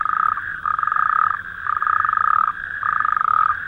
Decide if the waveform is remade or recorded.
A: remade